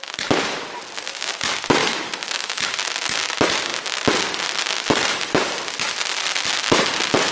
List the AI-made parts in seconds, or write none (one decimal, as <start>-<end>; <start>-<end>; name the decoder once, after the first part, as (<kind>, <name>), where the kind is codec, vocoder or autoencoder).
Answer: 1.8-2.6 (autoencoder, DAC-VAE)